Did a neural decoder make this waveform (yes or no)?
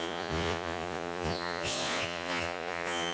yes